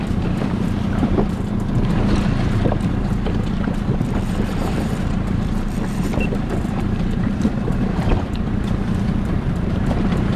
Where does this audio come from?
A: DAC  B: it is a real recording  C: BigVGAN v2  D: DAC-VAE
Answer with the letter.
C